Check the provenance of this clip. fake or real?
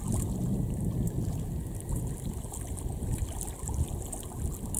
real